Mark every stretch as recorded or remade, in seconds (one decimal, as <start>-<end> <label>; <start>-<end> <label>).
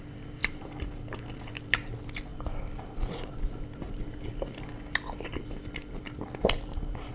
0.0-7.1 recorded